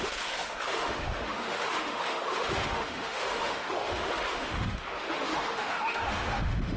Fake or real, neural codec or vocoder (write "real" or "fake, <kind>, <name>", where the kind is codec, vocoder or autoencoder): fake, autoencoder, DAC-VAE